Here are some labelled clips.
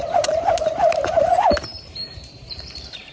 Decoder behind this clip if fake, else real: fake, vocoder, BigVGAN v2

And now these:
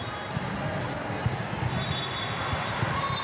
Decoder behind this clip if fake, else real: real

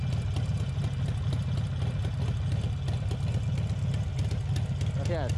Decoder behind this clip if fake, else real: real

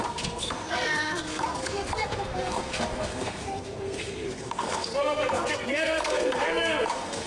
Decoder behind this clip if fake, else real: fake, codec, SNAC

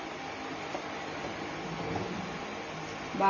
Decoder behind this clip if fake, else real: fake, vocoder, BigVGAN v2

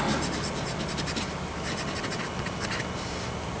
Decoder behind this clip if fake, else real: real